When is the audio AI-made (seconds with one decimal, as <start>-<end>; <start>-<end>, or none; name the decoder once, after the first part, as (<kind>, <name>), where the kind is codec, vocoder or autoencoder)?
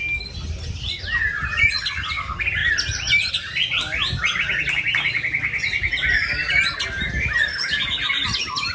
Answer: none